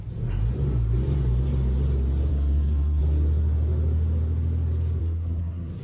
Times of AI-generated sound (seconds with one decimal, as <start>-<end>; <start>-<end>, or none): 2.3-3.0; 5.0-5.8